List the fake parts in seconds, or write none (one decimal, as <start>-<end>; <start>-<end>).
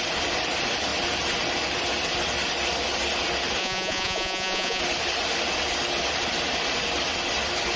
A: 3.6-4.8